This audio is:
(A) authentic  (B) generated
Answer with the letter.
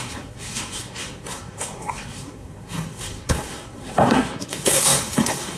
B